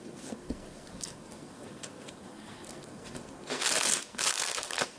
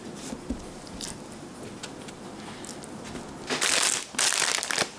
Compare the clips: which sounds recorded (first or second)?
second